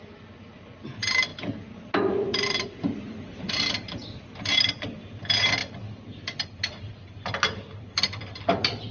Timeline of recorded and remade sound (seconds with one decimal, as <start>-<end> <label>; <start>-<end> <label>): 0.0-1.3 recorded; 1.3-3.4 remade; 3.4-4.0 recorded; 4.0-4.7 remade; 4.7-5.6 recorded; 5.6-6.6 remade; 6.6-8.9 recorded